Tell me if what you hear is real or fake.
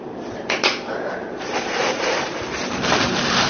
fake